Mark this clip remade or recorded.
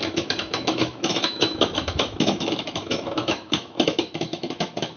remade